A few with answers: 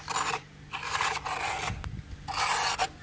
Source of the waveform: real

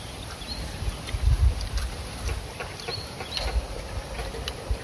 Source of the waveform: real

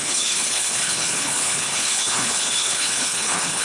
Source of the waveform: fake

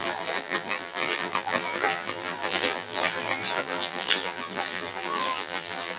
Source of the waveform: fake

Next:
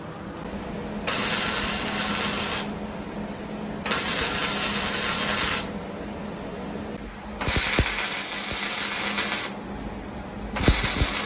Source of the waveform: real